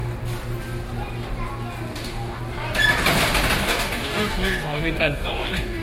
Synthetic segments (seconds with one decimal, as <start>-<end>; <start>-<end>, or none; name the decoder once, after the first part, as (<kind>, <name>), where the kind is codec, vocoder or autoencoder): 2.0-2.4 (codec, DAC); 3.6-5.8